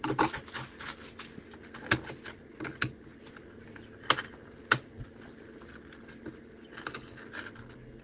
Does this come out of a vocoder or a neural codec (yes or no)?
no